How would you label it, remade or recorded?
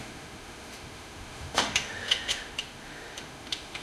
remade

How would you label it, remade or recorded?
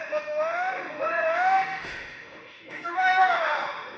remade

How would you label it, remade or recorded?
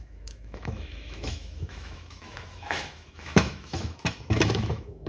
remade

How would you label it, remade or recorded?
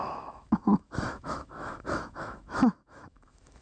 remade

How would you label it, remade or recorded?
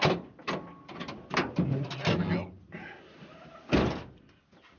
recorded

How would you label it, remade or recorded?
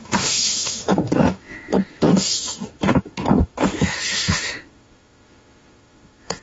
remade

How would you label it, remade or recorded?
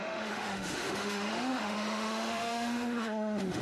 remade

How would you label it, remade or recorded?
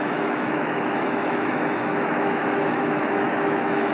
remade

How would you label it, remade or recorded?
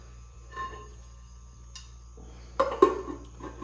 recorded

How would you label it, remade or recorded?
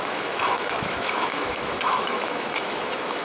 remade